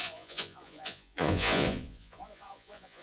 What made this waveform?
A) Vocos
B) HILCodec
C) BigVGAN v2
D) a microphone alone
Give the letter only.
A